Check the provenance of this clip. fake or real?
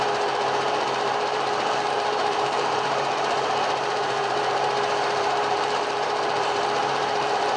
fake